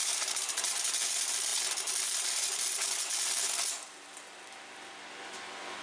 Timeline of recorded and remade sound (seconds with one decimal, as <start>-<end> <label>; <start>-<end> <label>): 0.0-0.7 remade; 0.7-5.8 recorded